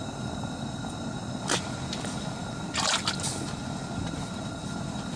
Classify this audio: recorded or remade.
recorded